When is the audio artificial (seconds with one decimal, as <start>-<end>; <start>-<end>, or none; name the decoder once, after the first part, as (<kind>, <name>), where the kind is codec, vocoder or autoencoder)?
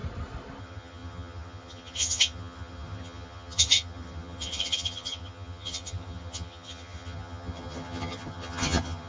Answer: 0.6-9.1 (vocoder, HiFi-GAN)